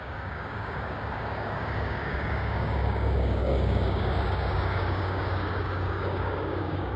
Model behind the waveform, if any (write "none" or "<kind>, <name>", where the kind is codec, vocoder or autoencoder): codec, DAC